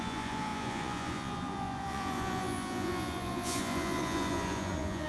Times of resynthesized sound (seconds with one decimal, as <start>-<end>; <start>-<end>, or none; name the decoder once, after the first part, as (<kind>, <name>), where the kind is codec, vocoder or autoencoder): 0.0-5.1 (vocoder, Vocos)